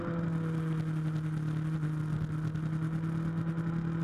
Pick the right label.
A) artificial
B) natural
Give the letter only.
B